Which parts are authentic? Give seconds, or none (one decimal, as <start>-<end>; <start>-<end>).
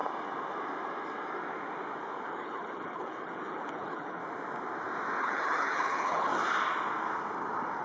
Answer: 0.0-2.3; 4.2-5.2; 6.3-7.8